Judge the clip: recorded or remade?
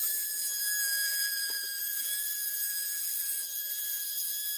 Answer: remade